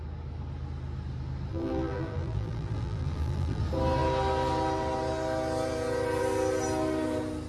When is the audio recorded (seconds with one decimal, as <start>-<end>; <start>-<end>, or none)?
0.0-1.5; 3.6-7.5